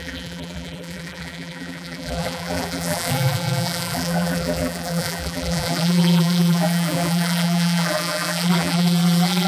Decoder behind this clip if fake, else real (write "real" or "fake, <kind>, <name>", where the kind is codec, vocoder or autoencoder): fake, vocoder, BigVGAN v2